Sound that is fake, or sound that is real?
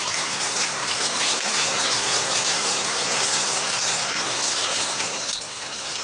fake